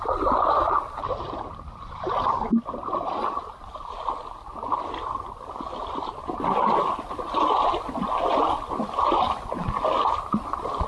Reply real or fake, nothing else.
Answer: real